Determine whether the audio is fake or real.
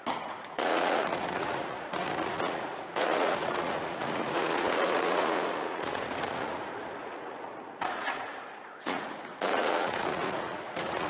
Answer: fake